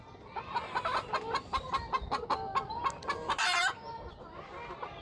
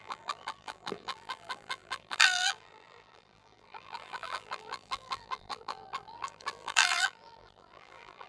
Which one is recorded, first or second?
first